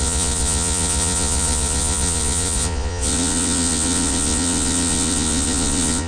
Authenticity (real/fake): fake